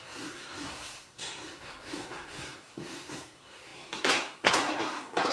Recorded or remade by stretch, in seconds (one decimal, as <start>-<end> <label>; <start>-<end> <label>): 0.0-5.3 remade